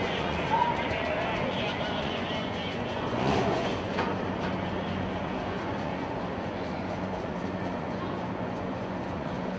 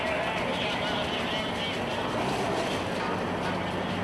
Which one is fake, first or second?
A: first